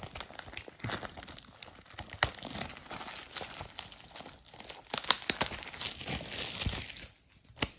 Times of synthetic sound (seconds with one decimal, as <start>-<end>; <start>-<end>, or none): none